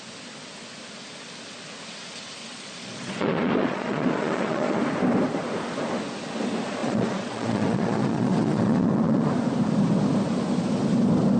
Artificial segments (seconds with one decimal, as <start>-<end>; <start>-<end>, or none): 2.4-4.8; 6.8-9.3